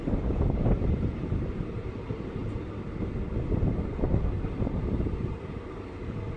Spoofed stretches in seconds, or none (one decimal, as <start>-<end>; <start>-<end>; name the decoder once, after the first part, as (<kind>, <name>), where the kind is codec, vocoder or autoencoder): 0.0-2.4 (vocoder, BigVGAN v2)